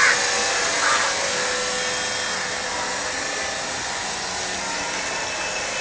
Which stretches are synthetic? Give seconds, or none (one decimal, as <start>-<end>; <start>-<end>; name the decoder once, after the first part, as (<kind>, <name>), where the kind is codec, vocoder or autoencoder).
3.8-4.3 (vocoder, Vocos)